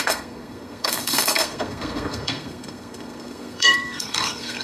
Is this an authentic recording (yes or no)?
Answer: no